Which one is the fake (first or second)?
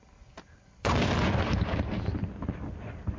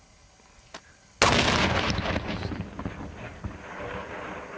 first